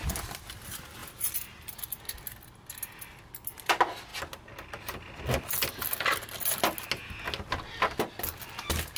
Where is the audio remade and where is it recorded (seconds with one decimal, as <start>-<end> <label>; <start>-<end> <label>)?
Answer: 0.0-9.0 recorded